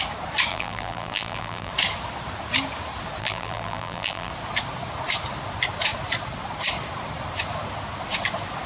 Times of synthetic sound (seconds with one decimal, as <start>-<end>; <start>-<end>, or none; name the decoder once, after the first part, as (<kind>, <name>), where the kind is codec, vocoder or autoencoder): 0.5-1.7 (vocoder, BigVGAN v2); 3.2-4.3